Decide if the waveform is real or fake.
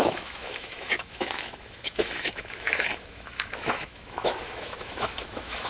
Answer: fake